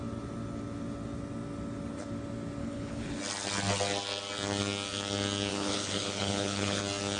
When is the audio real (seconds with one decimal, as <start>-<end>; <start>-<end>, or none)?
0.0-2.6; 3.2-5.5; 6.8-7.2